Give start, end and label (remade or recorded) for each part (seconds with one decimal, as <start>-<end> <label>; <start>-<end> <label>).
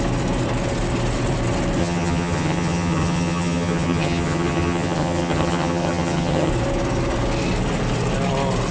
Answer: 0.0-1.8 recorded; 1.8-6.5 remade; 6.5-8.7 recorded